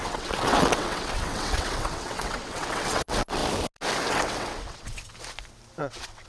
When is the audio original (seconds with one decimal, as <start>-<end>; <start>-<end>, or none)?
3.4-4.1; 5.1-5.8